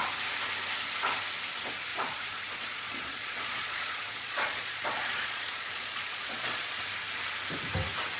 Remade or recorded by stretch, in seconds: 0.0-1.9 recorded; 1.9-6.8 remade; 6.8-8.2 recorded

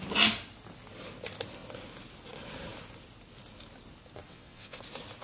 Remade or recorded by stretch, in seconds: 0.0-4.3 recorded; 4.3-4.8 remade; 4.8-5.2 recorded

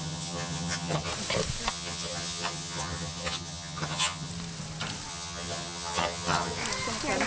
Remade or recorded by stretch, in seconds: 0.0-1.1 remade; 1.1-1.7 recorded; 1.7-4.3 remade; 4.3-5.1 recorded; 5.1-6.6 remade; 6.6-7.3 recorded

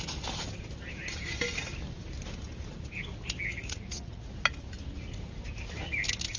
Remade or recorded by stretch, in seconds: 0.0-3.5 recorded; 3.5-4.3 remade; 4.3-6.4 recorded

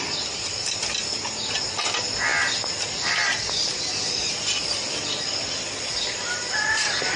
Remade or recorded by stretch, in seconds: 0.0-2.3 recorded; 2.3-6.6 remade; 6.6-7.2 recorded